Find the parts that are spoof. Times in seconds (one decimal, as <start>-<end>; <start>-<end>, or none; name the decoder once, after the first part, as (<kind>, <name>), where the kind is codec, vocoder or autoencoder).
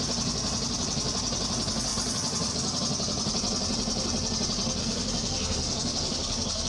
4.8-6.7 (codec, SNAC)